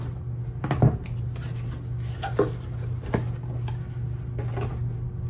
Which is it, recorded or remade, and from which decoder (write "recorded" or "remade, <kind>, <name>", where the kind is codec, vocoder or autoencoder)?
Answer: recorded